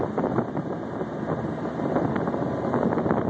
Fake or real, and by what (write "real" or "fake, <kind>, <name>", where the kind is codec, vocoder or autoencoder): real